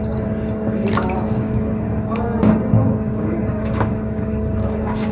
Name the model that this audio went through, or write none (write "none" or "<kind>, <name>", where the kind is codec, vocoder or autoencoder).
codec, DAC